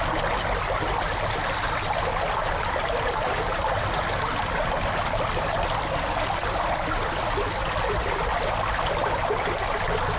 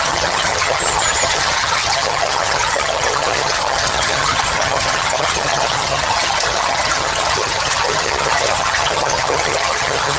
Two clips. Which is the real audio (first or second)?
first